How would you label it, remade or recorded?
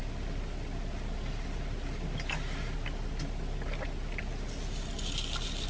recorded